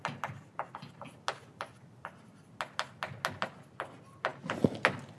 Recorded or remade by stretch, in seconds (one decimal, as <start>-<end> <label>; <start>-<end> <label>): 0.0-5.2 recorded